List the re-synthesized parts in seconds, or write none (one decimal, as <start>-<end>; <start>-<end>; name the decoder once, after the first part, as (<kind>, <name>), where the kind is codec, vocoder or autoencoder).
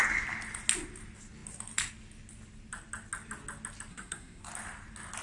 3.9-4.4 (codec, SNAC)